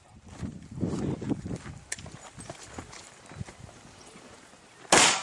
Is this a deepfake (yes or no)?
no